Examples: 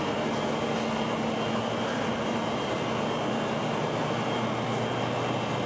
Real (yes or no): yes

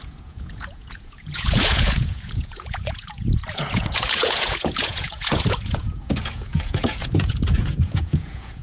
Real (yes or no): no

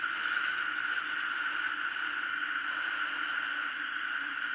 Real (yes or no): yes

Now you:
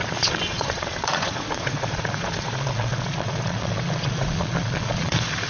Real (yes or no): no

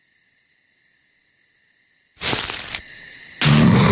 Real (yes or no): yes